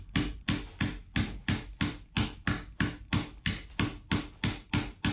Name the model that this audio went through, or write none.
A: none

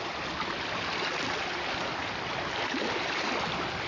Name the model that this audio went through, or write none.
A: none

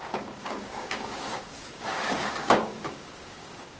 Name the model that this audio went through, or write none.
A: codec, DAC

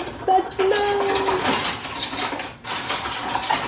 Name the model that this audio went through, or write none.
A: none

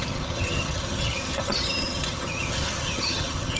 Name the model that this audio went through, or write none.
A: vocoder, HiFi-GAN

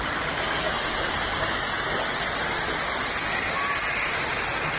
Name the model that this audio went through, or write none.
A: none